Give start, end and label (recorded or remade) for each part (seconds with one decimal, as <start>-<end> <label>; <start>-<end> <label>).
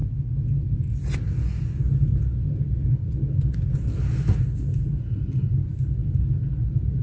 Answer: 0.0-7.0 recorded